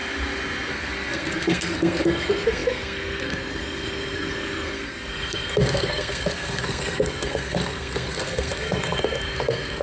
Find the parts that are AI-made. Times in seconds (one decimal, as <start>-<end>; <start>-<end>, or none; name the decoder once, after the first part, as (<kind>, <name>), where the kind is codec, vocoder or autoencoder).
0.7-9.8 (codec, SNAC)